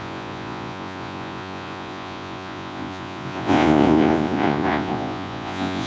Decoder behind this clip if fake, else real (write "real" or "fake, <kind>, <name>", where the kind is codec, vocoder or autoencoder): fake, vocoder, Vocos